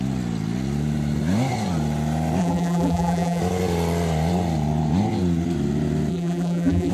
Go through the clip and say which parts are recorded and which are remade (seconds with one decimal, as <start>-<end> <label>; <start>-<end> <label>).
0.0-2.4 recorded; 2.4-3.4 remade; 3.4-6.1 recorded; 6.1-6.9 remade